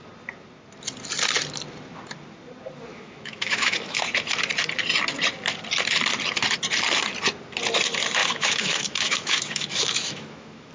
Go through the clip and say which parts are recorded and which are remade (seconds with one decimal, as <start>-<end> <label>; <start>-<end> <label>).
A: 0.0-2.9 recorded; 2.9-4.0 remade; 4.0-8.2 recorded; 8.2-10.7 remade